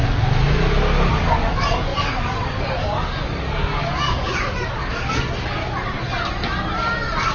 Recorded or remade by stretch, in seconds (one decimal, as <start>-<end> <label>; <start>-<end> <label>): 0.0-1.1 recorded; 1.1-5.6 remade; 5.6-7.3 recorded